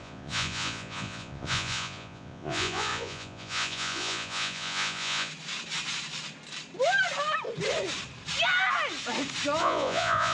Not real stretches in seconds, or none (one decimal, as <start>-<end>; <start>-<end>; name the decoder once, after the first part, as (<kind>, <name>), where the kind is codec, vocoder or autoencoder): 0.0-5.3 (vocoder, Vocos); 9.6-10.3